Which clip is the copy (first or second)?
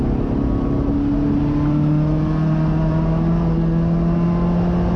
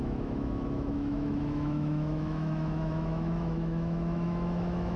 second